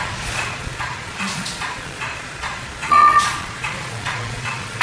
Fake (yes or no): yes